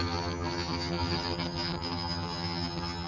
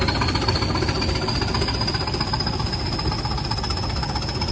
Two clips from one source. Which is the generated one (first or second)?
first